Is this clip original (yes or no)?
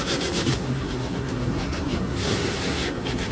no